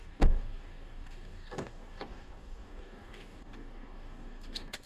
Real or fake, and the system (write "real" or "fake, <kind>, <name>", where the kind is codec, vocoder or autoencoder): fake, codec, DAC